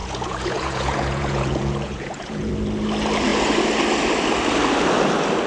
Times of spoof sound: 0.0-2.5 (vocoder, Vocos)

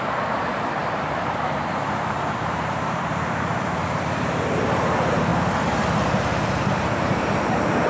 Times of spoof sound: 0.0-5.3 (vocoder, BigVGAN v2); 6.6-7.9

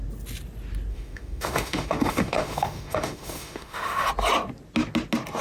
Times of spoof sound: 0.9-4.1 (autoencoder, DAC-VAE)

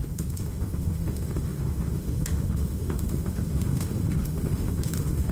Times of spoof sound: 0.0-5.3 (autoencoder, DAC-VAE)

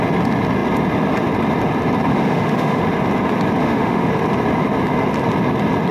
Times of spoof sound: 2.1-2.8 (autoencoder, DAC-VAE); 3.6-4.1

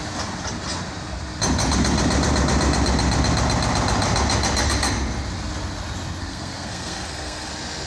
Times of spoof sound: 6.2-7.5 (codec, SNAC)

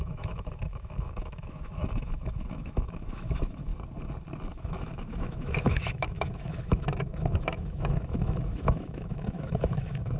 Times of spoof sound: 0.0-3.7 (autoencoder, DAC-VAE); 4.5-10.2

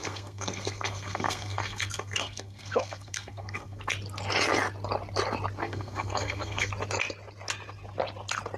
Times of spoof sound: 0.0-3.8 (codec, SNAC); 5.6-6.7